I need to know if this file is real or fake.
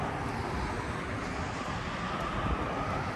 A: real